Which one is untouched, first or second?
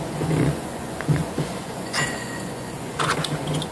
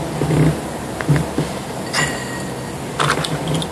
second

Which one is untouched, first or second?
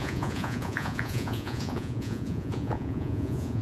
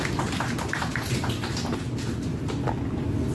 second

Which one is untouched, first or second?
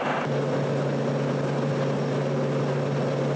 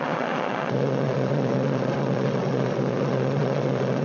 first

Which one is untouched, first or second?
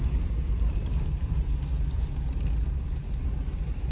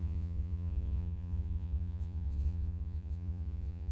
first